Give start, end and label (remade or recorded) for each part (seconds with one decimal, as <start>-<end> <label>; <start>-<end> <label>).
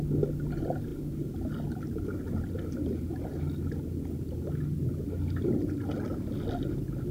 0.0-7.1 recorded